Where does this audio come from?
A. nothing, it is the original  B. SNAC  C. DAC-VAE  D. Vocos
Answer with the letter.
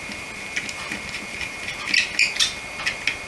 A